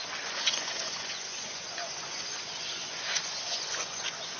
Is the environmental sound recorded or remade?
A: remade